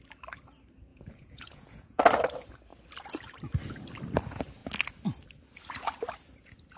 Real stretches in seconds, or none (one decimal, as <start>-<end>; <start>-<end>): 0.0-0.9; 2.0-6.8